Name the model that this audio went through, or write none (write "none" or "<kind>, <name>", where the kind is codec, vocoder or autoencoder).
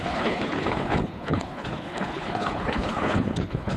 codec, HILCodec